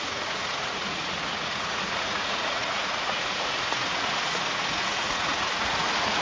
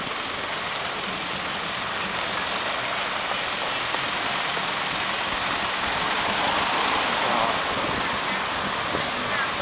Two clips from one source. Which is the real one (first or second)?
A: second